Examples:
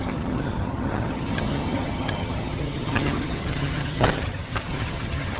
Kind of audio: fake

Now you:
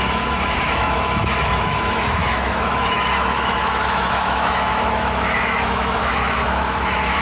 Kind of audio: fake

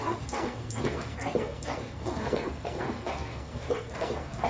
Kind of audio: fake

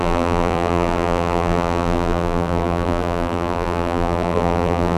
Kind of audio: fake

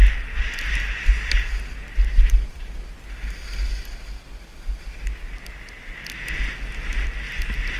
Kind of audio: real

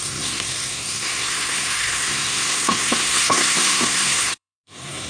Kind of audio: fake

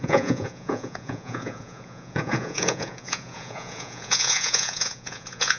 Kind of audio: fake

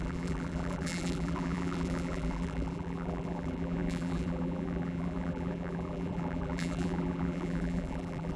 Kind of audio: fake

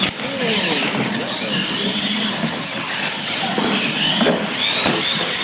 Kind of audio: real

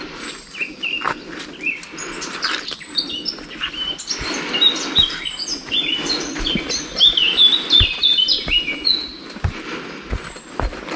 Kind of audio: real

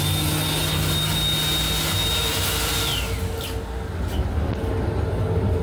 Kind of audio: real